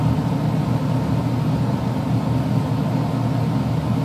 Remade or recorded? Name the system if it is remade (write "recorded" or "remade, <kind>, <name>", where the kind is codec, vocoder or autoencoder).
recorded